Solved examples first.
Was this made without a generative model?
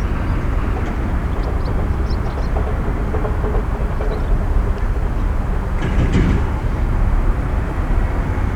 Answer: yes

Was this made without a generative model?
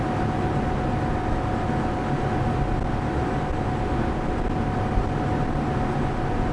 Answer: yes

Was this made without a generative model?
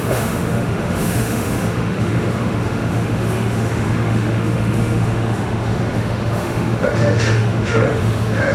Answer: no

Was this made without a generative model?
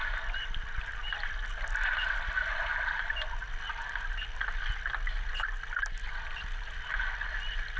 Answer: yes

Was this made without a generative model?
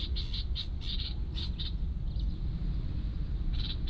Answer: yes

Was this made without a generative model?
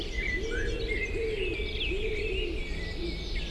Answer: yes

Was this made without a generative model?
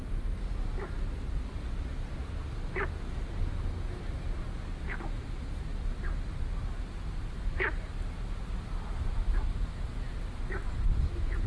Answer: yes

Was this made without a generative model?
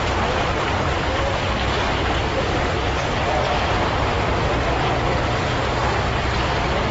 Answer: yes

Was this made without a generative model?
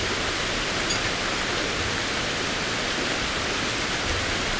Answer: yes